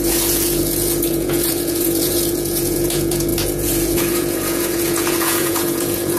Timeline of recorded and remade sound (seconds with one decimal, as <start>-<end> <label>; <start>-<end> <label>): 0.0-6.2 remade